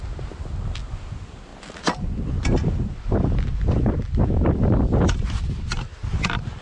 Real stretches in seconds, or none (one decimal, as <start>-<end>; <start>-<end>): 0.0-6.6